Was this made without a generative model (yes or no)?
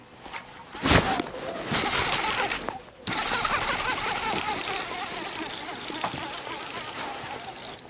yes